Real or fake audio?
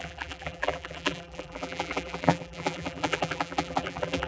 fake